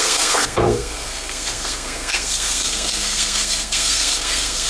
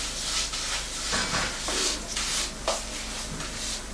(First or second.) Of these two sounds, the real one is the second